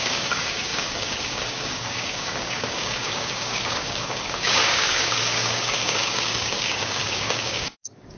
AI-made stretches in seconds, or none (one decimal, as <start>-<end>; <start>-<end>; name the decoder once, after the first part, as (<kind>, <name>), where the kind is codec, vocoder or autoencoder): 0.0-8.2 (codec, DAC)